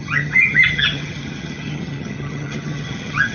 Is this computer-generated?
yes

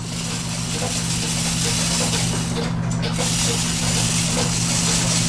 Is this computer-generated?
no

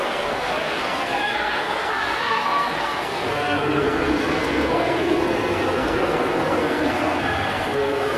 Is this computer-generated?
yes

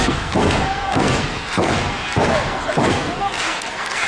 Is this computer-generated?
yes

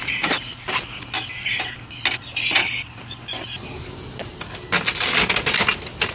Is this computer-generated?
no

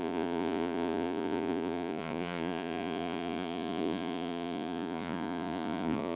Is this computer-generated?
yes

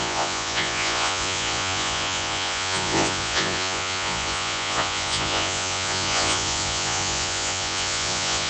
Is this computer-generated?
yes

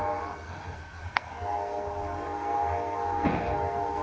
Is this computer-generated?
yes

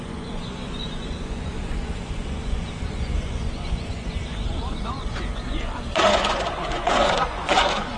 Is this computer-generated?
yes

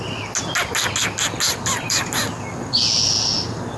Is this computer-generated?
no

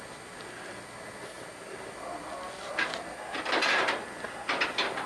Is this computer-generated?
no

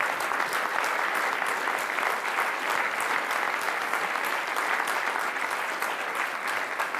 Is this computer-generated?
no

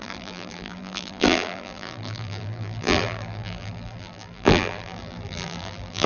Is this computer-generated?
yes